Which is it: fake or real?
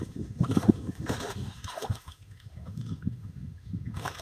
fake